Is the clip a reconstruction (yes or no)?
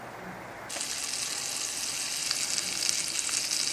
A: no